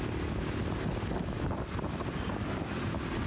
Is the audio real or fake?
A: real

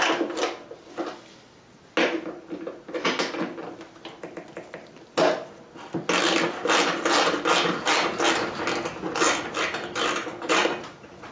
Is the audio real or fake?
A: real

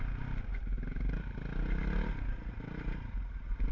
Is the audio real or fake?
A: real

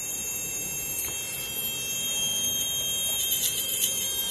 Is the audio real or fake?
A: fake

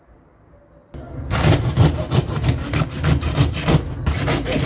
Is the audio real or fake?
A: real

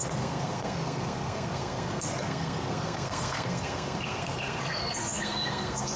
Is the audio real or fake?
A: fake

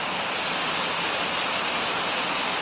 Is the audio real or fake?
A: real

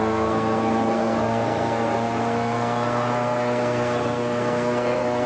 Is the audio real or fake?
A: fake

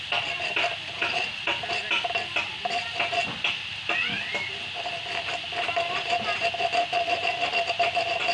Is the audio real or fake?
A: real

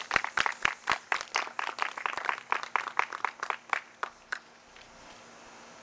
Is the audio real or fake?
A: real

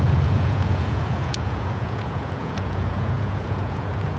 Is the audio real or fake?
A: fake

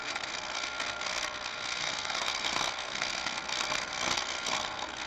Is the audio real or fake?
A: fake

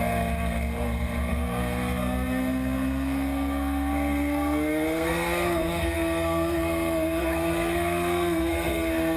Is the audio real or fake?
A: fake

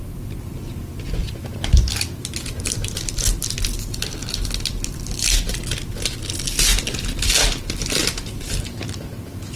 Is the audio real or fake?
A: real